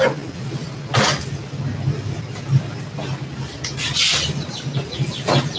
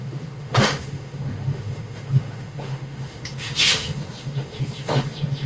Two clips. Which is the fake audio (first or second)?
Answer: second